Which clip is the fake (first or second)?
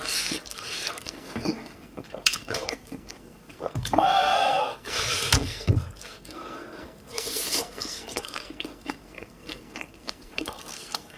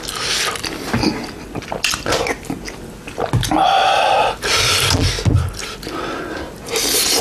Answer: first